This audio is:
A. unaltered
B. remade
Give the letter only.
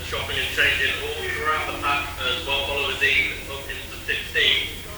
B